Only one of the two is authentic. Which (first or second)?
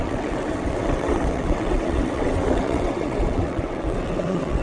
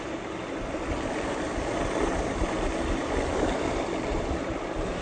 second